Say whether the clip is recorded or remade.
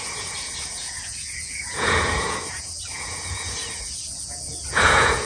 remade